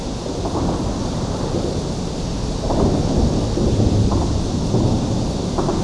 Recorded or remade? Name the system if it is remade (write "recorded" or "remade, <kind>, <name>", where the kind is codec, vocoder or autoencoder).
recorded